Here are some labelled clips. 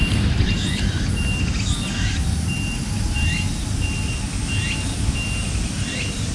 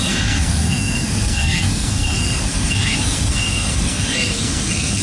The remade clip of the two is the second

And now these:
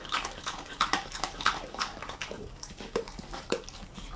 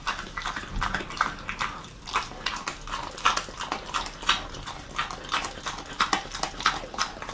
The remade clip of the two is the first